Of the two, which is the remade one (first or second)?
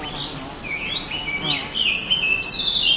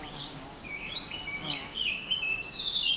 second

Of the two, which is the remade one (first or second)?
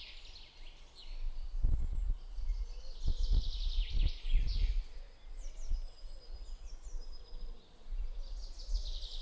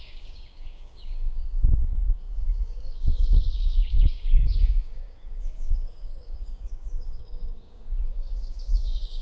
second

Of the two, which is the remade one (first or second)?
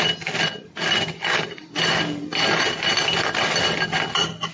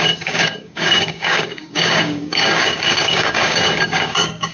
second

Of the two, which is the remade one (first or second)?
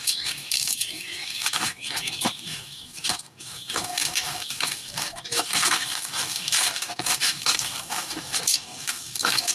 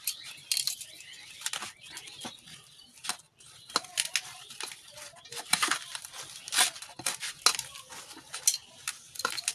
first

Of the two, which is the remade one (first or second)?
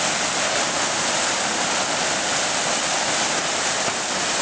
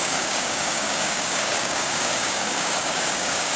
second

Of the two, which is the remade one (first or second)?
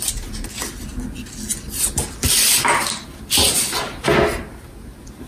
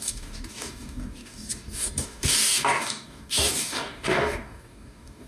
second